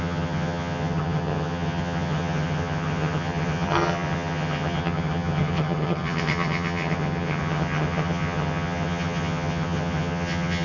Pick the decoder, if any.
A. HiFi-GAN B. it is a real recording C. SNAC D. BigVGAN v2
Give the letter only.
A